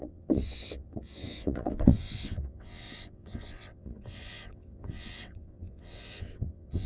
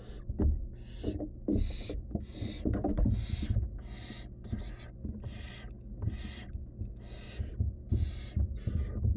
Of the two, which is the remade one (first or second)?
first